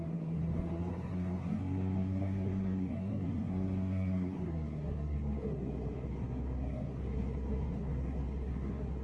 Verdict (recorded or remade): remade